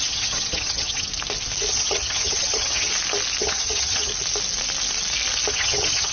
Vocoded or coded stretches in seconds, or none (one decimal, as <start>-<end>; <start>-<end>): 0.0-1.1; 1.7-2.9; 3.4-4.1; 5.5-6.1